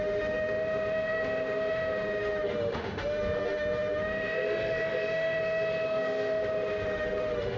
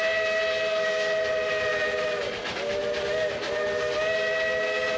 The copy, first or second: first